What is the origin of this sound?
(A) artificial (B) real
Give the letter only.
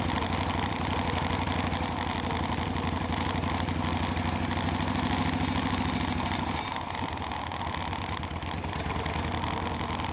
B